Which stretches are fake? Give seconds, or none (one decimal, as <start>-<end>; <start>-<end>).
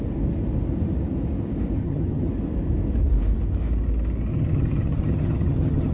1.8-2.3; 4.3-5.9